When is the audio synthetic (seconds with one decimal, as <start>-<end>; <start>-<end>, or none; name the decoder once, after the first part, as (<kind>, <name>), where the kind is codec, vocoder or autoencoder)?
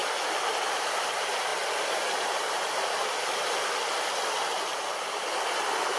none